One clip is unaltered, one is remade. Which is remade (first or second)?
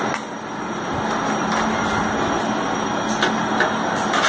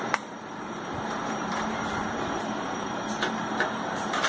second